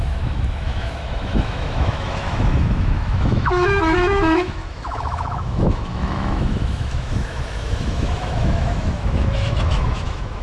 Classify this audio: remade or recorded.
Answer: remade